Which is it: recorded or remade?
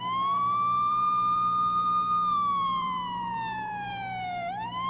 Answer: remade